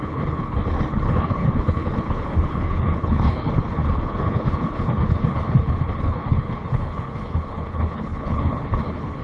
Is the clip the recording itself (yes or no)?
no